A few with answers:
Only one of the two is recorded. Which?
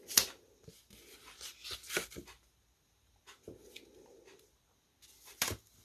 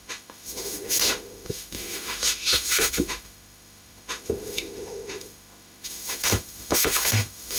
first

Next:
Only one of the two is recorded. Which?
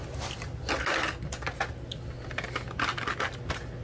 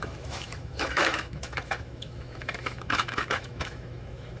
first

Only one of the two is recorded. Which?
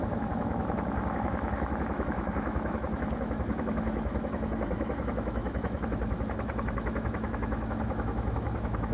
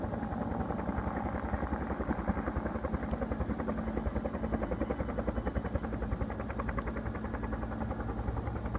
second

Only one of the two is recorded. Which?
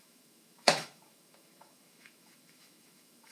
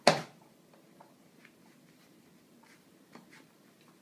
second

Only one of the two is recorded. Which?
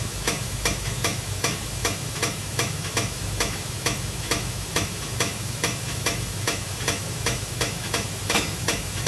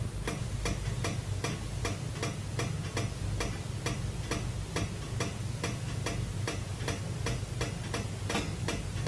second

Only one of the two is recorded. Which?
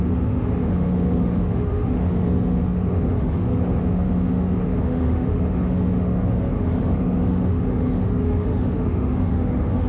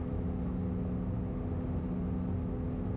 second